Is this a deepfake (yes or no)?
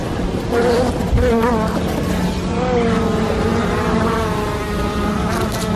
no